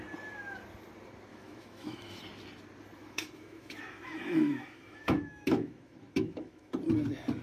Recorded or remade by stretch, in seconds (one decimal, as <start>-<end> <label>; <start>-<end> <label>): 0.0-1.3 recorded; 1.3-2.2 remade; 2.2-3.0 recorded; 3.0-6.7 remade; 6.7-7.4 recorded